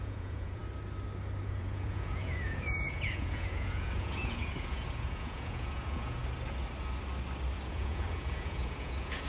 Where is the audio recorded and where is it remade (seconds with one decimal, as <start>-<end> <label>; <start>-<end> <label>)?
0.0-0.6 remade; 0.6-1.4 recorded; 1.4-6.2 remade; 6.2-7.7 recorded; 7.7-9.3 remade